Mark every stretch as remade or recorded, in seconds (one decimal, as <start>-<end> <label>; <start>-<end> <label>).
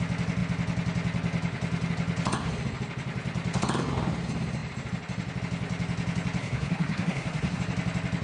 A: 0.0-6.4 recorded; 6.4-7.6 remade; 7.6-8.2 recorded